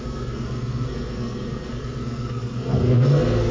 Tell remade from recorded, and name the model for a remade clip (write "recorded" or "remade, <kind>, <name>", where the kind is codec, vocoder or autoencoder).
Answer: remade, codec, SNAC